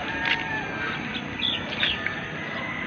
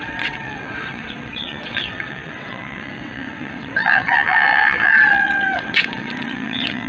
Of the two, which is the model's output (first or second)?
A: second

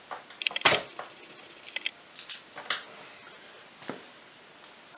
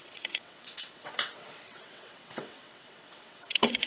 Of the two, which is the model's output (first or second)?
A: second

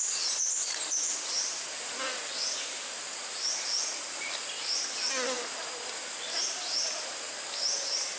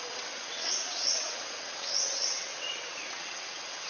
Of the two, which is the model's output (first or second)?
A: second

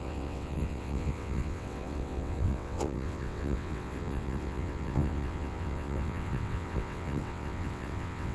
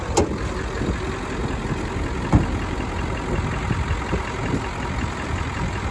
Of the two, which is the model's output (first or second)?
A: first